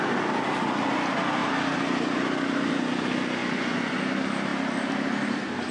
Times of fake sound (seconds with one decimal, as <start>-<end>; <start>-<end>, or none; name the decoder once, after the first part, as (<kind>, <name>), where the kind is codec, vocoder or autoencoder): 3.4-4.0 (vocoder, Vocos)